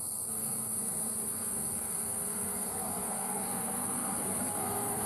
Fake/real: fake